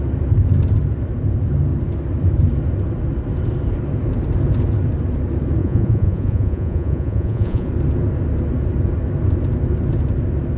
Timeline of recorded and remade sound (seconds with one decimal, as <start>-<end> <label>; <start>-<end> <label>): 0.0-5.6 recorded; 5.6-7.7 remade; 7.7-10.6 recorded